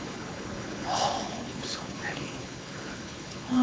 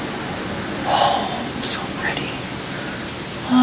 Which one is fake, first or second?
first